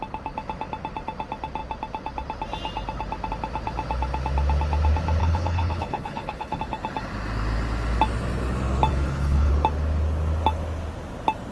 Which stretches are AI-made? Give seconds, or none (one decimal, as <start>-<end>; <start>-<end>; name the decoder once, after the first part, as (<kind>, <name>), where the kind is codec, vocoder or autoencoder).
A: 5.2-6.6 (codec, HILCodec); 8.9-9.5